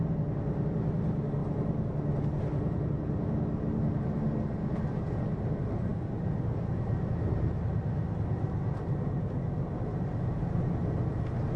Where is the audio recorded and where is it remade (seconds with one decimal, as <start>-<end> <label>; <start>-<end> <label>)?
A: 0.0-11.6 recorded